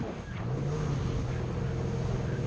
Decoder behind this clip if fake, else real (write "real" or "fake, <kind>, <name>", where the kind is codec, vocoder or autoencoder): real